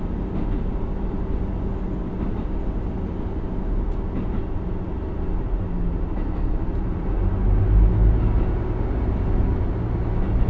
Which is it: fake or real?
real